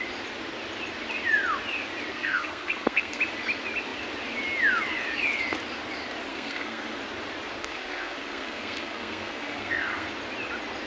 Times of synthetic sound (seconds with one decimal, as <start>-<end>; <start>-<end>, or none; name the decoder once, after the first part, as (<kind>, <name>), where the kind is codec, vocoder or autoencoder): 2.1-3.2 (codec, SNAC); 6.3-7.0; 7.6-10.1